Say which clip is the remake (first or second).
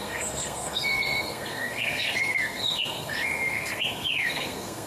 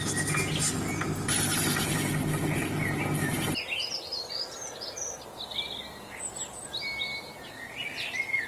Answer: first